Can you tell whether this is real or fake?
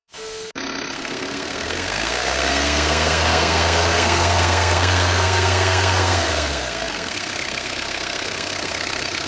fake